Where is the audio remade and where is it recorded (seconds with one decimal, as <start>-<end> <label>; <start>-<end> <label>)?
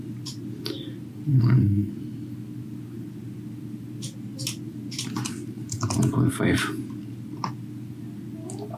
0.0-1.3 recorded; 1.3-1.9 remade; 1.9-8.8 recorded